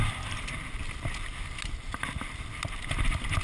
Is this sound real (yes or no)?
yes